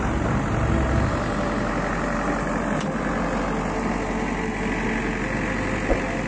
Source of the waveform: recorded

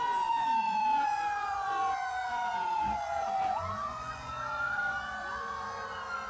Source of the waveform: remade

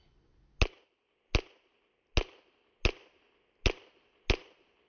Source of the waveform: recorded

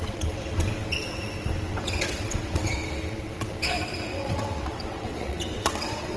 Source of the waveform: remade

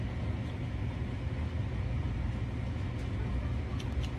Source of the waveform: recorded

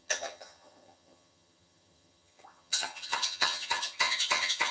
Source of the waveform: remade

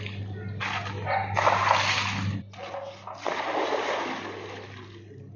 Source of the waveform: recorded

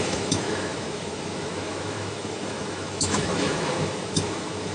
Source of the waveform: remade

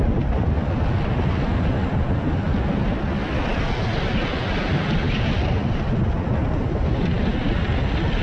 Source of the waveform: recorded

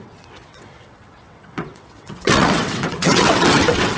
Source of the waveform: remade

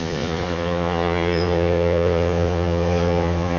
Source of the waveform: remade